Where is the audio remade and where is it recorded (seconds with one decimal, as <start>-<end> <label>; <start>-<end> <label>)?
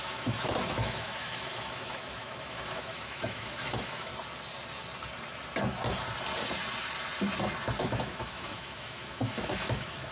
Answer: 0.0-4.1 remade; 4.1-7.8 recorded; 7.8-10.1 remade